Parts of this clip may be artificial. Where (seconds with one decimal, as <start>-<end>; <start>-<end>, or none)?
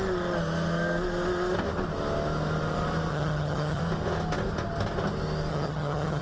3.1-3.8; 5.5-6.2